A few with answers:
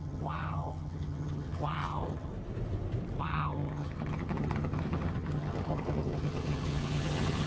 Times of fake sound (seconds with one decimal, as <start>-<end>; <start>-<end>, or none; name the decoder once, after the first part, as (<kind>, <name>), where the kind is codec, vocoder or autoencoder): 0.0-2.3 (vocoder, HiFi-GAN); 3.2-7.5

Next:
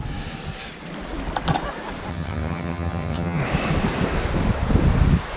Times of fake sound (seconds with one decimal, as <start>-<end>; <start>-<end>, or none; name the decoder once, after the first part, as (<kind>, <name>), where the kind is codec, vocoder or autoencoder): 2.1-3.4 (vocoder, HiFi-GAN)

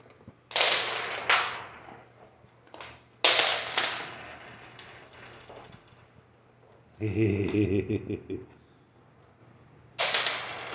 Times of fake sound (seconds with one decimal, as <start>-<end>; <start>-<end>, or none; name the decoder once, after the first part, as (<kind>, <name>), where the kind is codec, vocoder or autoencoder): none

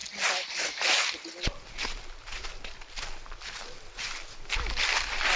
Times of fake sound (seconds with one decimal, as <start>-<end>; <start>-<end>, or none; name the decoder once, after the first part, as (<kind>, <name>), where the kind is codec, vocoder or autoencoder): none

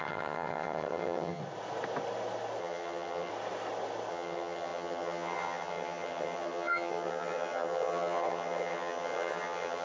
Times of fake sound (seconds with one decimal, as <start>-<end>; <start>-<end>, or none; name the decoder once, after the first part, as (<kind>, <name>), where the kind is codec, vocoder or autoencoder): 0.0-1.4 (vocoder, HiFi-GAN); 2.6-3.3; 4.1-9.8